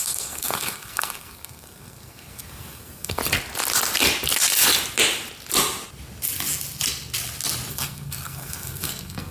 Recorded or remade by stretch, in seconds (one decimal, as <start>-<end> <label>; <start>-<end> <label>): 0.0-3.2 remade; 3.2-7.7 recorded; 7.7-9.3 remade